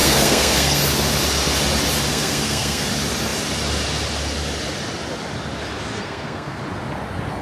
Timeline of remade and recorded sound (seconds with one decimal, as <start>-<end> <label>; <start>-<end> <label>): 0.0-0.8 remade; 0.8-2.1 recorded; 2.1-2.9 remade; 2.9-5.9 recorded; 5.9-6.6 remade; 6.6-7.4 recorded